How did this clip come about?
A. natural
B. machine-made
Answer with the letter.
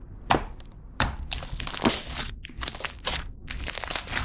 A